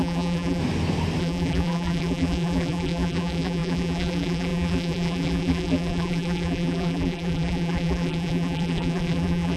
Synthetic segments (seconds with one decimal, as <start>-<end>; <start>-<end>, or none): 0.0-0.6; 1.2-9.6